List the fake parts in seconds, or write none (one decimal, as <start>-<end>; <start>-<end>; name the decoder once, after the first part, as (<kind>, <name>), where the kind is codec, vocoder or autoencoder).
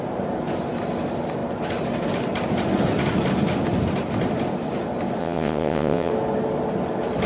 5.2-6.1 (vocoder, WaveNeXt)